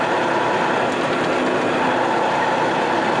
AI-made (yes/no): no